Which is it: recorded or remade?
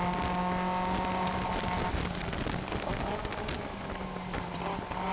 recorded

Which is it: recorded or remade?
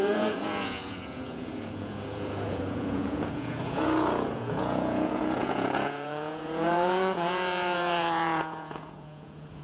remade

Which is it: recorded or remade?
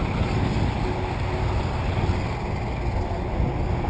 recorded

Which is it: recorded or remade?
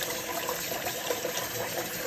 recorded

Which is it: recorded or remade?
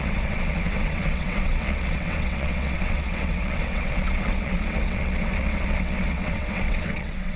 remade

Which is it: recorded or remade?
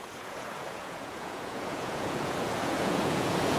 remade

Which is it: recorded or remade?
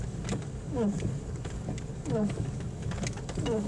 remade